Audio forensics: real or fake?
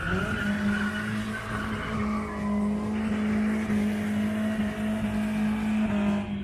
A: real